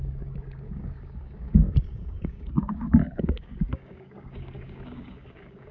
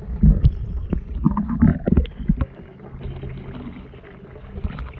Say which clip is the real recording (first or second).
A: second